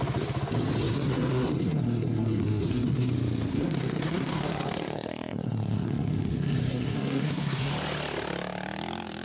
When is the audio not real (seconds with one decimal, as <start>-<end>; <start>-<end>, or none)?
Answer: 0.8-3.1; 3.5-7.7